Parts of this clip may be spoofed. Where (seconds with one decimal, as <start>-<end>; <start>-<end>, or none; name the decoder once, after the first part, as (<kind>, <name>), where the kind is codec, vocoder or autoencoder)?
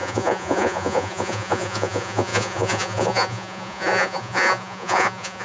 0.0-5.4 (vocoder, Vocos)